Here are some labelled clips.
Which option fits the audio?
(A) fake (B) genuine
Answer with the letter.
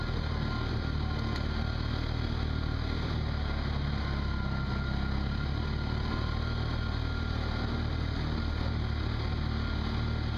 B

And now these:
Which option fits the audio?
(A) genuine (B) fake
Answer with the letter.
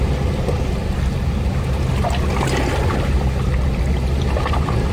A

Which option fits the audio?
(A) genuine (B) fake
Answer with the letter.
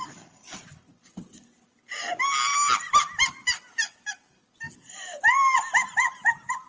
A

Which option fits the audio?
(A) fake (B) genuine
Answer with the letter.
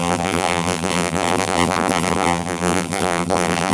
A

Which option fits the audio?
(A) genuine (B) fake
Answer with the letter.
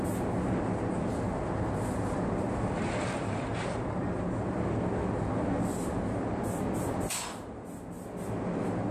A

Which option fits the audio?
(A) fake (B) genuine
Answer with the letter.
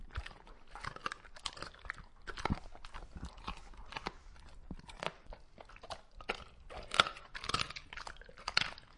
B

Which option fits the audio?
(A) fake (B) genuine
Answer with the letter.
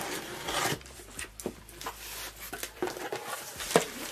A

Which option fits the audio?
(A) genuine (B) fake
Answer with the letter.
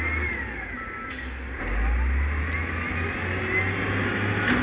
A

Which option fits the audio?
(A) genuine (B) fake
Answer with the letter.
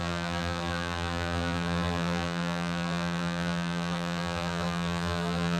B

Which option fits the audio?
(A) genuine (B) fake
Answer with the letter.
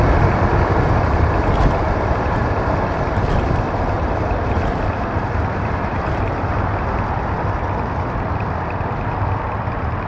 B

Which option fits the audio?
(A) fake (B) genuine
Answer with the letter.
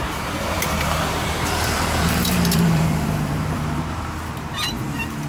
A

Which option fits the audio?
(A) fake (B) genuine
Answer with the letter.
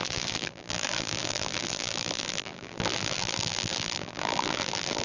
A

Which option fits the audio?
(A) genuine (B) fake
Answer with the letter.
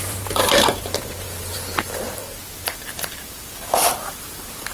B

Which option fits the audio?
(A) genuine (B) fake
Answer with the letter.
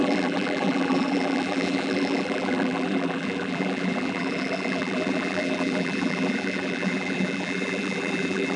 B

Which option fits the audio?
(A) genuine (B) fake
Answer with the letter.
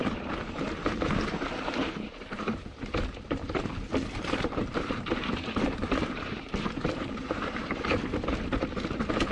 B